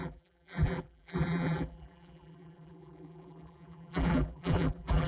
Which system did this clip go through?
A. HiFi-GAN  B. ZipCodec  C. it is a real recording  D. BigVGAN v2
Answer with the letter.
D